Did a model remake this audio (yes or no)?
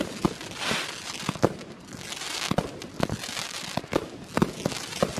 no